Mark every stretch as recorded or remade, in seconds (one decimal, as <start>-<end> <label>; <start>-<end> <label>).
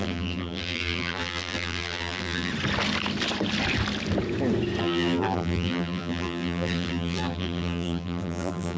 0.0-2.5 remade; 2.5-4.8 recorded; 4.8-8.8 remade